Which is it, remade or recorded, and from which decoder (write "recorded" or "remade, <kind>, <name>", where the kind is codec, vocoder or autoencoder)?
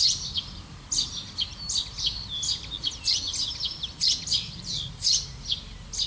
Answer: recorded